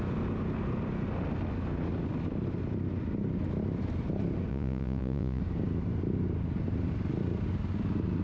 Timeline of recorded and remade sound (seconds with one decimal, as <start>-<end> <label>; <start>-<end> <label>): 0.0-4.5 recorded; 4.5-5.4 remade; 5.4-8.2 recorded